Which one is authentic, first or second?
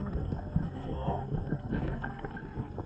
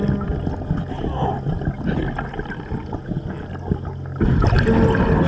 second